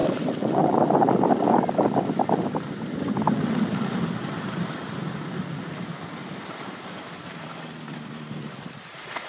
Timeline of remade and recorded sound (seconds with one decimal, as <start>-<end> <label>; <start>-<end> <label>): 0.0-0.7 remade; 0.7-9.3 recorded